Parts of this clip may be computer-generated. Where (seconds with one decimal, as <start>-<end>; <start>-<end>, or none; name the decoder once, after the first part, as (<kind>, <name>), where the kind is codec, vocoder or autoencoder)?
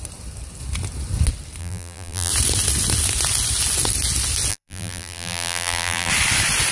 1.6-2.3 (vocoder, BigVGAN v2); 4.5-6.1